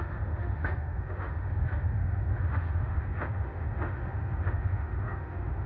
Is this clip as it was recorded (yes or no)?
no